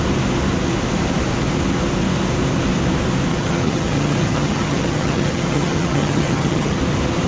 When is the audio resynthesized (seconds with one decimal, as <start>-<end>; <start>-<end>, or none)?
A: 3.3-6.8